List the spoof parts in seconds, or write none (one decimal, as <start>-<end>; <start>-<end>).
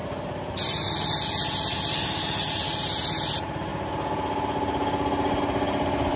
none